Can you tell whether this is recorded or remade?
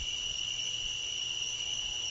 recorded